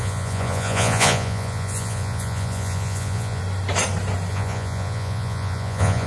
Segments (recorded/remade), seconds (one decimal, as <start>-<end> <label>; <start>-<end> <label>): 0.0-3.4 remade; 3.4-4.3 recorded; 4.3-6.1 remade